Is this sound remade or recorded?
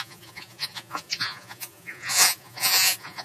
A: remade